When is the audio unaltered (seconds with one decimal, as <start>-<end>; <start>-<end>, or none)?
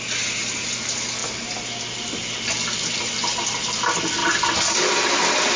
0.0-5.6